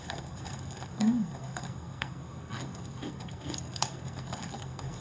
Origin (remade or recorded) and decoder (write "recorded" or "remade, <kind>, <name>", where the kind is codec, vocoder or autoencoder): remade, codec, SNAC